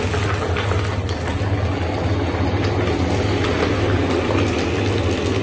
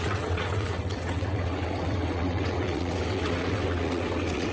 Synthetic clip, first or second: second